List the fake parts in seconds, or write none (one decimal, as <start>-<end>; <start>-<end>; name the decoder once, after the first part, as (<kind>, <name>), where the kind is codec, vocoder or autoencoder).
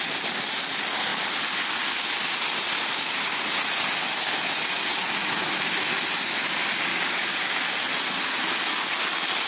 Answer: 6.9-7.6 (codec, DAC)